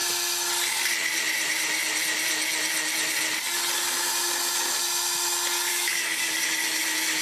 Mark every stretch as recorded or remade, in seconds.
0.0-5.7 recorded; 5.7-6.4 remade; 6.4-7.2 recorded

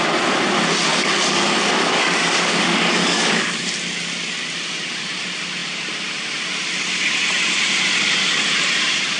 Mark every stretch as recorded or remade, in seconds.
0.0-0.9 recorded; 0.9-3.6 remade; 3.6-9.2 recorded

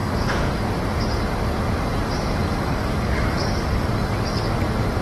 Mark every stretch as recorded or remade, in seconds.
0.0-0.7 remade; 0.7-2.4 recorded; 2.4-3.9 remade; 3.9-5.0 recorded

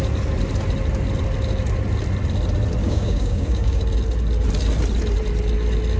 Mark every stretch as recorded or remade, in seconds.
0.0-2.8 recorded; 2.8-3.8 remade; 3.8-6.0 recorded

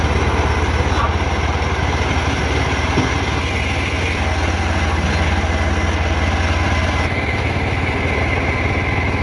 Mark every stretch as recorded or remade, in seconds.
0.0-9.2 recorded

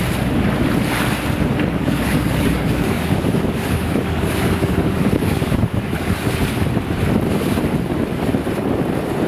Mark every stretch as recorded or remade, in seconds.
0.0-1.8 recorded; 1.8-6.3 remade; 6.3-9.3 recorded

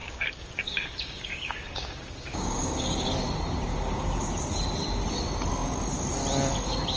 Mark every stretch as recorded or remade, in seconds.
0.0-3.1 remade; 3.1-3.7 recorded; 3.7-4.2 remade; 4.2-7.0 recorded

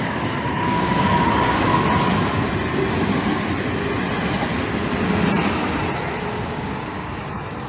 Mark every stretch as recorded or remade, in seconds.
0.0-1.7 remade; 1.7-6.3 recorded; 6.3-7.7 remade